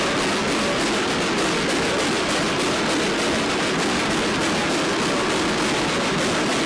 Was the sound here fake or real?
real